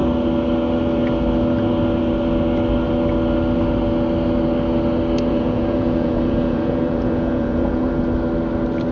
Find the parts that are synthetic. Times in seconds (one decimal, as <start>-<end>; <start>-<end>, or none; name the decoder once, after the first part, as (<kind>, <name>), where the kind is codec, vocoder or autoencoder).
5.3-8.0 (vocoder, Vocos)